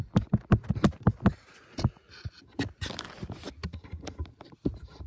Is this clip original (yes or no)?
yes